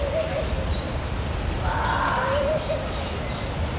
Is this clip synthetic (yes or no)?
no